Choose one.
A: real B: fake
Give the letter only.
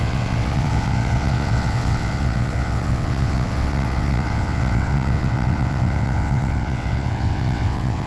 B